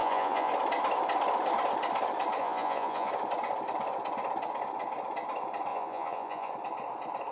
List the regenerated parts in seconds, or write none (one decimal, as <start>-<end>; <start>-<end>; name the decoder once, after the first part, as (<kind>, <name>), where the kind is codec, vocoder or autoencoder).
0.0-0.5 (vocoder, Vocos); 2.4-3.1; 5.7-6.5